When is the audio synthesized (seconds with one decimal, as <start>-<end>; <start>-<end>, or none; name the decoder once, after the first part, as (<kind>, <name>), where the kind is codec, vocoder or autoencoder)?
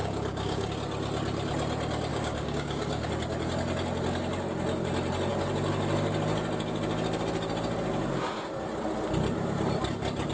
0.0-0.7 (codec, DAC); 2.1-3.1